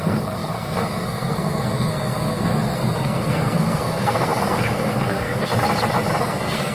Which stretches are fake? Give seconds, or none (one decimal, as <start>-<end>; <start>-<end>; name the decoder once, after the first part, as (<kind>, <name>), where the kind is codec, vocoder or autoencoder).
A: 0.0-5.5 (codec, SNAC); 6.2-6.7